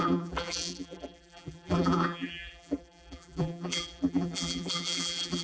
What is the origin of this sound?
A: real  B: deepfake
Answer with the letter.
B